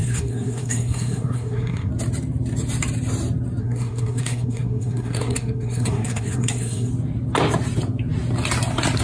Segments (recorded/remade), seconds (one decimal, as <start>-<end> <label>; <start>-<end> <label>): 0.0-1.9 remade; 1.9-3.6 recorded; 3.6-6.9 remade; 6.9-9.0 recorded